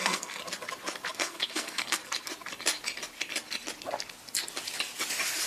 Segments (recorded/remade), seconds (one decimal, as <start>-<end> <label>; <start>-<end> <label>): 0.0-0.4 remade; 0.4-1.1 recorded; 1.1-2.0 remade; 2.0-5.5 recorded